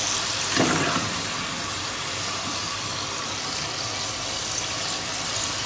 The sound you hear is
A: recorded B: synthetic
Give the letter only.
A